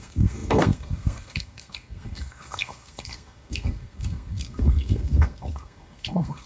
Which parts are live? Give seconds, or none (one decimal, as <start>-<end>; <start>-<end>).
none